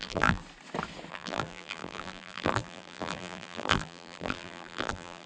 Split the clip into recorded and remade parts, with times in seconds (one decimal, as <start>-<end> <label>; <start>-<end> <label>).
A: 0.0-0.4 remade; 0.4-1.1 recorded; 1.1-5.3 remade